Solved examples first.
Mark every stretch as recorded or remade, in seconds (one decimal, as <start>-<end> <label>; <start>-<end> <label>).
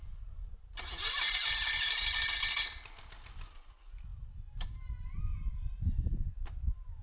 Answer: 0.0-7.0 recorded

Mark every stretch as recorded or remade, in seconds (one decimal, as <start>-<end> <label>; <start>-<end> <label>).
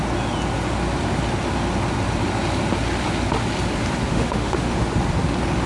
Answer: 0.0-4.1 recorded; 4.1-4.8 remade; 4.8-5.7 recorded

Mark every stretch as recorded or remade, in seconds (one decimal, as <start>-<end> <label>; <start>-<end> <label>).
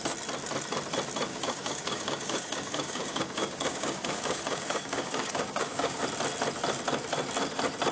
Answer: 0.0-1.3 recorded; 1.3-6.0 remade; 6.0-7.9 recorded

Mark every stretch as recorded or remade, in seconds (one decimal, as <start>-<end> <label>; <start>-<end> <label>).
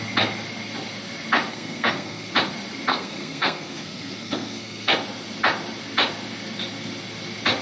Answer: 0.0-1.5 recorded; 1.5-2.3 remade; 2.3-2.9 recorded; 2.9-4.9 remade; 4.9-7.6 recorded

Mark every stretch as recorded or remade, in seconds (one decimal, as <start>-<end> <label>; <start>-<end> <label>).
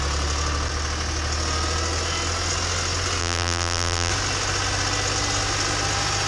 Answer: 0.0-3.2 recorded; 3.2-4.1 remade; 4.1-6.3 recorded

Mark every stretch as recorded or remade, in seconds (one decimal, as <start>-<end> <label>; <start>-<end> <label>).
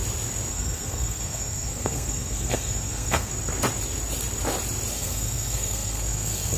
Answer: 0.0-0.5 recorded; 0.5-3.3 remade; 3.3-4.9 recorded; 4.9-6.6 remade